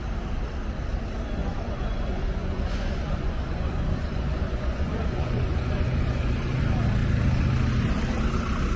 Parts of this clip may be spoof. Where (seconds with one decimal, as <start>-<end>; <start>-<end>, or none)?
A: 1.4-6.6